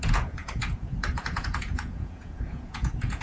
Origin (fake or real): fake